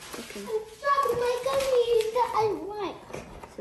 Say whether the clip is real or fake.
real